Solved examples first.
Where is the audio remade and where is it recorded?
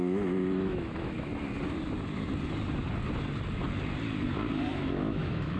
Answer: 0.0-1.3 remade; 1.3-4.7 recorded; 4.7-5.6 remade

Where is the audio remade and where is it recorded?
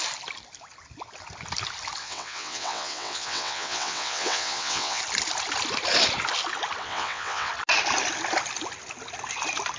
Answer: 0.0-2.0 recorded; 2.0-5.0 remade; 5.0-6.8 recorded; 6.8-7.5 remade; 7.5-9.8 recorded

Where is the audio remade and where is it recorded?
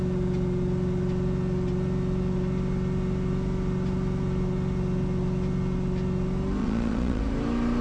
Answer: 0.0-6.6 recorded; 6.6-7.2 remade; 7.2-7.8 recorded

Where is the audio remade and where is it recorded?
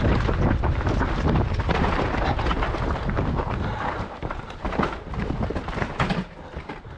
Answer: 0.0-7.0 recorded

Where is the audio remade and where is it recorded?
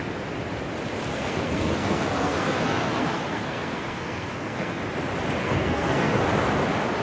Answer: 0.0-1.1 recorded; 1.1-4.8 remade; 4.8-5.4 recorded; 5.4-6.2 remade; 6.2-7.0 recorded